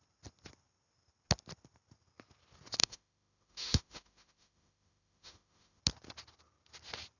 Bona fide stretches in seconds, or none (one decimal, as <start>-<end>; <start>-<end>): 0.0-2.8; 5.8-7.2